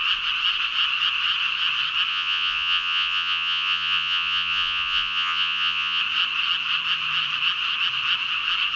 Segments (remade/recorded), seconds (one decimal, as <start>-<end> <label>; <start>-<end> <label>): 0.0-2.1 recorded; 2.1-6.0 remade; 6.0-8.8 recorded